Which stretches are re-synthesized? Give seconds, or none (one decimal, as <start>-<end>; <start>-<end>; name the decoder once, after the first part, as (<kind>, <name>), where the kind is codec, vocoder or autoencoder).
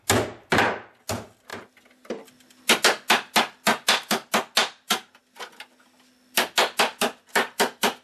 4.6-5.2 (vocoder, BigVGAN v2)